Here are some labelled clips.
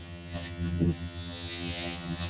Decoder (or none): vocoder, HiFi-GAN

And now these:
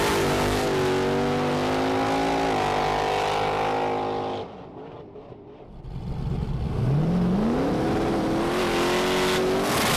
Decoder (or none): none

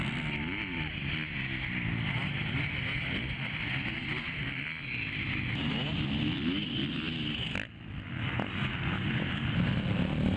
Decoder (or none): none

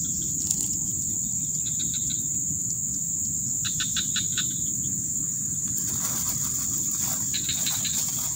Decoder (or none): none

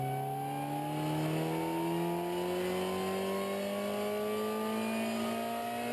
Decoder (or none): none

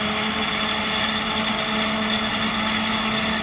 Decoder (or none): none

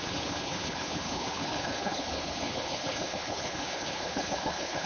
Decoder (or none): codec, HILCodec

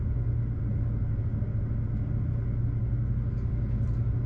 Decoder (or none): none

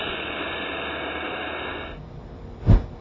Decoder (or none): none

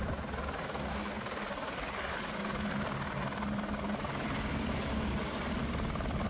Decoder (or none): none